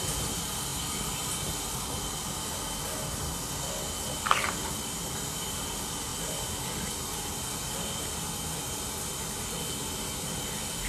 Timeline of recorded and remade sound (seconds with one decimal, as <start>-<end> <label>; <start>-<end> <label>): 0.0-10.9 recorded